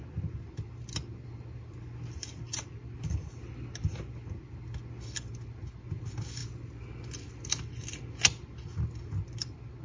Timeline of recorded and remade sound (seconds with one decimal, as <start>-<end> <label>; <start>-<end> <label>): 0.0-9.8 recorded